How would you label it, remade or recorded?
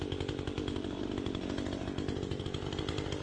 recorded